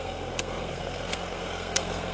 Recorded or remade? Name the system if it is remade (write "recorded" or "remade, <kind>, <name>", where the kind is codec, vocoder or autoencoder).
remade, codec, SNAC